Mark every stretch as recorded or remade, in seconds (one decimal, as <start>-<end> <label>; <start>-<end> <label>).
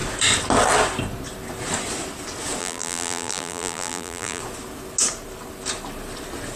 0.0-2.6 recorded; 2.6-4.4 remade; 4.4-6.6 recorded